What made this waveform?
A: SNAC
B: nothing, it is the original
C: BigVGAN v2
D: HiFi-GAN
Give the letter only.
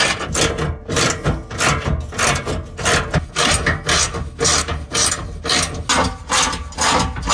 B